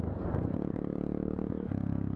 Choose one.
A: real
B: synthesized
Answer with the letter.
B